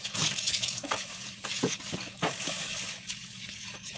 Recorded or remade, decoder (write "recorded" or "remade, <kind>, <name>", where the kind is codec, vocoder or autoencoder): remade, codec, DAC